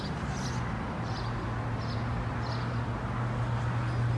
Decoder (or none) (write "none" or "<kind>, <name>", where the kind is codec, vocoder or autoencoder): none